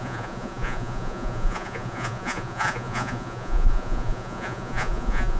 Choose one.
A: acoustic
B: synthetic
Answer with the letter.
B